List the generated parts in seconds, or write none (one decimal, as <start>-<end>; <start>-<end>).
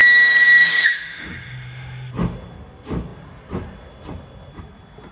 0.0-2.1